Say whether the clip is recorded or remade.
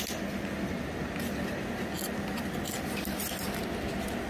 recorded